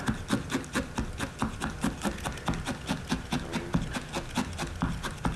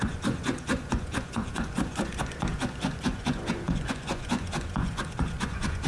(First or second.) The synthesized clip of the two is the second